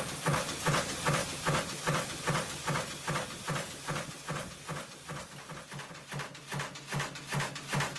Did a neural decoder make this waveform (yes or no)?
no